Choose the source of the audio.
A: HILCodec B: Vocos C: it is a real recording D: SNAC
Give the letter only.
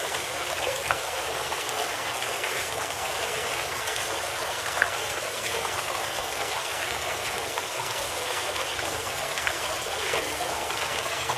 D